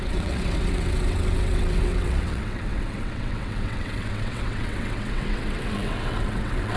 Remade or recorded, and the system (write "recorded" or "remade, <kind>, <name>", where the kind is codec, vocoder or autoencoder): remade, vocoder, WaveNeXt